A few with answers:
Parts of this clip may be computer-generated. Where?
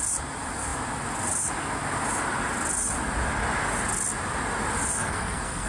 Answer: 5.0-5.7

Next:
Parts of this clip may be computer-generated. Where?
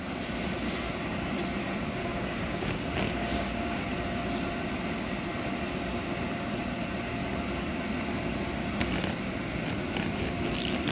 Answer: 2.0-3.8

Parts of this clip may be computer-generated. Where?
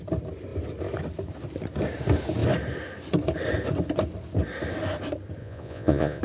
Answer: 5.4-6.2